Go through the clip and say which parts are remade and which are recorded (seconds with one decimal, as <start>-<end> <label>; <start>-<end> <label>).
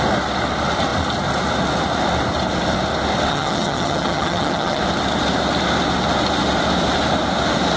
0.0-3.3 recorded; 3.3-4.8 remade; 4.8-7.8 recorded